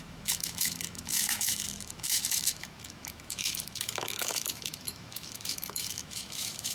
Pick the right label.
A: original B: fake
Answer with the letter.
B